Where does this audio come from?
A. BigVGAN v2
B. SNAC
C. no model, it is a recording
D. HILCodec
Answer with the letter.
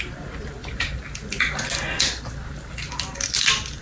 C